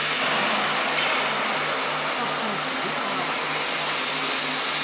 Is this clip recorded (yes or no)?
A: yes